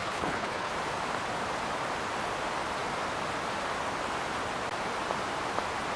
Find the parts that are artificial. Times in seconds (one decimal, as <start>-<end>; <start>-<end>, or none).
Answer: 0.0-0.7